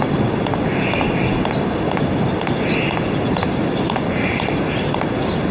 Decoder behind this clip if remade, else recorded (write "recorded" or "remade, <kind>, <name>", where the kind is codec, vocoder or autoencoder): recorded